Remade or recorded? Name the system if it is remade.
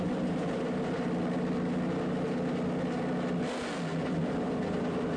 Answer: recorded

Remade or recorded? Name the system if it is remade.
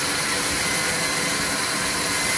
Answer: recorded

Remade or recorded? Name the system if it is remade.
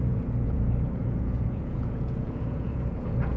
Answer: remade, vocoder, Vocos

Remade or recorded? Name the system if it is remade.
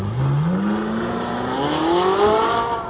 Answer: recorded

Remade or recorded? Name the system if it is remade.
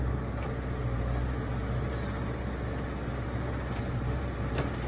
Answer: recorded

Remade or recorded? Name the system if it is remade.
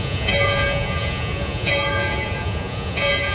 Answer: remade, vocoder, Vocos